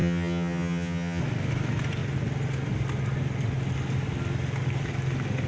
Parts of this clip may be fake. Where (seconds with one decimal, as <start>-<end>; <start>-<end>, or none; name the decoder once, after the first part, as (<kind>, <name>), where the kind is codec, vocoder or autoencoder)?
0.0-1.2 (vocoder, HiFi-GAN)